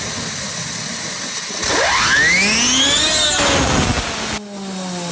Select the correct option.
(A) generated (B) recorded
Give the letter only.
B